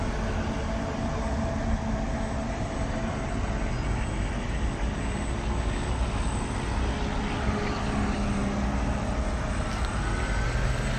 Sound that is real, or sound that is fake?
real